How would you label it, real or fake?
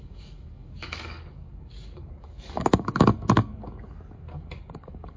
fake